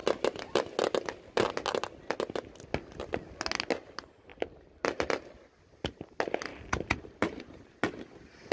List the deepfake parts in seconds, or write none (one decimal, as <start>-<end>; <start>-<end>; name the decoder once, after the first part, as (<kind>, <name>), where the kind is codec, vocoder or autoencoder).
4.3-5.2 (vocoder, BigVGAN v2); 6.5-7.6